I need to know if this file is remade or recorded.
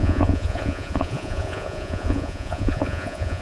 remade